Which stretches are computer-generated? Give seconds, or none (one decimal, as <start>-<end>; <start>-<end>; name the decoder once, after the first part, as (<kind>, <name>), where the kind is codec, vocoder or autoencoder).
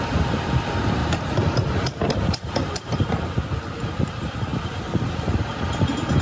1.0-3.3 (vocoder, BigVGAN v2)